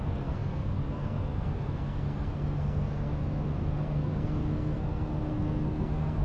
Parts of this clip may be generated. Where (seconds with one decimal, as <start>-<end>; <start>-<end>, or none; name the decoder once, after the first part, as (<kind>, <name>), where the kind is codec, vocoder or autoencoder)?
0.0-6.2 (codec, SNAC)